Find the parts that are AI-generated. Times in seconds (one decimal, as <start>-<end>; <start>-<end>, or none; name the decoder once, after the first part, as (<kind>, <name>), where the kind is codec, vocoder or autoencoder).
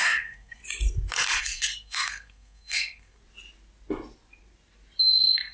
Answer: 0.0-0.6 (codec, SNAC); 1.4-3.2; 5.1-5.5